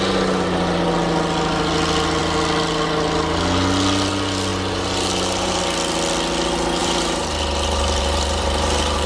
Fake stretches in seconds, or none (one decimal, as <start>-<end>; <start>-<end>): 4.5-5.6; 6.8-9.1